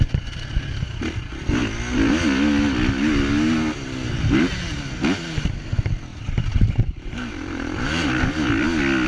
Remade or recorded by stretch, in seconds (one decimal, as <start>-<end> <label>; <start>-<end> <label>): 0.0-6.1 recorded; 6.1-8.3 remade; 8.3-9.1 recorded